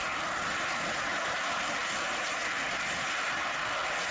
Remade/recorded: recorded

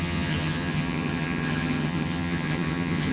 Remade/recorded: remade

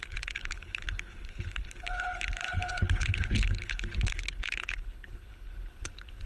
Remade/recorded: remade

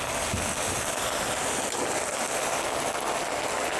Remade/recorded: recorded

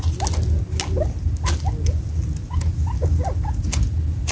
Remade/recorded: recorded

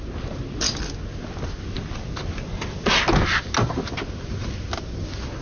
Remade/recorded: recorded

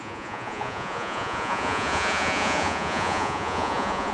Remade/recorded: remade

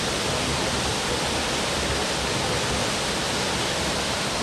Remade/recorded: recorded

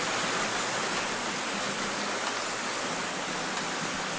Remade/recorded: recorded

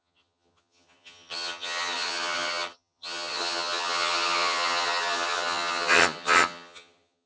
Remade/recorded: remade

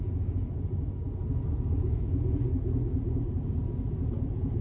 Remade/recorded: remade